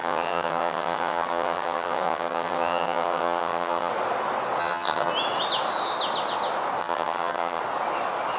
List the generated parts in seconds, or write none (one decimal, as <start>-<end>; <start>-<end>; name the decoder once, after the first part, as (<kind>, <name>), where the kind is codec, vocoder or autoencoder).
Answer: 0.0-3.9 (vocoder, HiFi-GAN); 4.6-5.1; 6.8-7.6